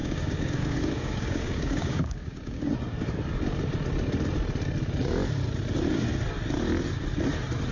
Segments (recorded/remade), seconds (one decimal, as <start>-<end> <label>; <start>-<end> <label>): 0.0-2.7 remade; 2.7-7.7 recorded